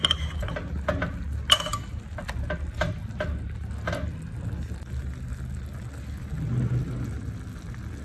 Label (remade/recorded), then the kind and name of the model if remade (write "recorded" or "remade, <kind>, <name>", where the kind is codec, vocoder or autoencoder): recorded